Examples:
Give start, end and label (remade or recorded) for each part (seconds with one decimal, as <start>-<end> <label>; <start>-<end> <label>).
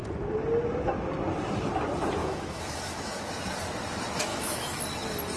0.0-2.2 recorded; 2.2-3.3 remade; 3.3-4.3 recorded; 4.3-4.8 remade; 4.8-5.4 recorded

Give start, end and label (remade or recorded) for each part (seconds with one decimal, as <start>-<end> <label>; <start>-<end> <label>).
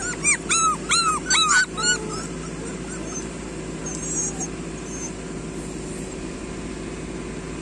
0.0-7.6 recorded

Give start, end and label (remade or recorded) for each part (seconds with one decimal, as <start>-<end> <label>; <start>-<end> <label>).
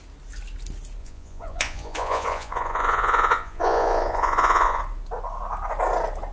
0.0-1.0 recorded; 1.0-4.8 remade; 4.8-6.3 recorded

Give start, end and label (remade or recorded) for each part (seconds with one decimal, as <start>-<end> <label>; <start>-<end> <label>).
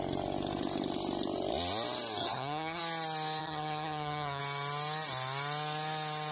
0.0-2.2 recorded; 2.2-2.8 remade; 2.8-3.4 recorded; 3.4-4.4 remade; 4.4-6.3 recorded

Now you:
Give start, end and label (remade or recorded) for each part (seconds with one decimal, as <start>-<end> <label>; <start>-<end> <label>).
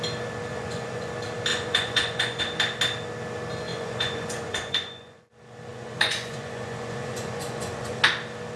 0.0-0.5 recorded; 0.5-1.1 remade; 1.1-1.5 recorded; 1.5-2.4 remade; 2.4-3.7 recorded; 3.7-5.3 remade; 5.3-5.7 recorded; 5.7-8.0 remade; 8.0-8.6 recorded